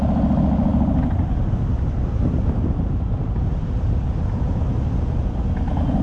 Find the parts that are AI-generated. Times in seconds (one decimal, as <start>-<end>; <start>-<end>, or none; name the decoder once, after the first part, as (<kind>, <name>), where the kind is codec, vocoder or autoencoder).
0.7-4.3 (vocoder, BigVGAN v2)